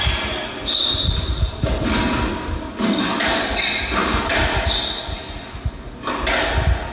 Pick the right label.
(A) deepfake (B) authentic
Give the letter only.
B